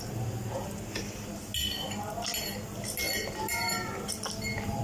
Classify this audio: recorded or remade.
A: recorded